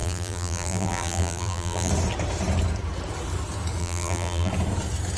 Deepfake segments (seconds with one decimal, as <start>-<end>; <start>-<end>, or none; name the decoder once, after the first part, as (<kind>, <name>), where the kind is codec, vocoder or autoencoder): 0.0-1.9 (vocoder, BigVGAN v2); 3.8-4.5